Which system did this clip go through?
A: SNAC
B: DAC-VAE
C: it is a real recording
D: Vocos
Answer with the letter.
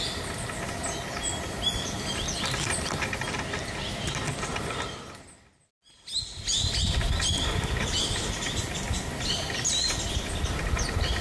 C